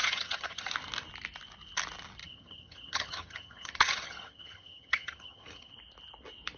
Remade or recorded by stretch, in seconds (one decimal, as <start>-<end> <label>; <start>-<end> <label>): 0.0-0.7 remade; 0.7-2.2 recorded; 2.2-5.7 remade; 5.7-6.6 recorded